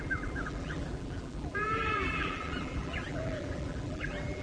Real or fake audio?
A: fake